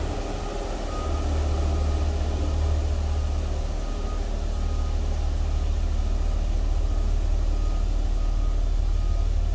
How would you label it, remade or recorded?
recorded